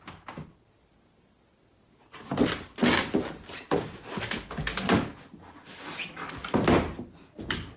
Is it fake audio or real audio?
real